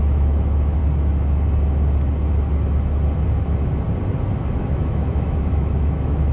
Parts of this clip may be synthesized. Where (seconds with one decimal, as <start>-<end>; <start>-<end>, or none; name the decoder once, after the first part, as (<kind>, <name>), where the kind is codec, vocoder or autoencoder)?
0.0-0.8 (autoencoder, DAC-VAE); 4.6-6.3